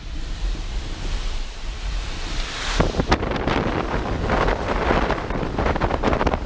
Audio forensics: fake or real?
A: fake